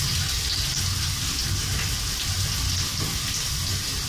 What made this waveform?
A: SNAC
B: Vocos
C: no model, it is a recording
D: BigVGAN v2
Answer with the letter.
C